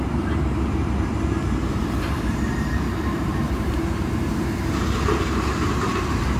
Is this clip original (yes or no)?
no